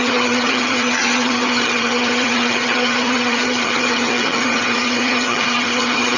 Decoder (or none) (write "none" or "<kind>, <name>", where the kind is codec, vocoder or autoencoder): vocoder, HiFi-GAN